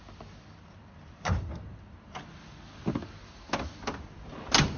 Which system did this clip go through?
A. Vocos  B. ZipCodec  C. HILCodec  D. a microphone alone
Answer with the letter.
D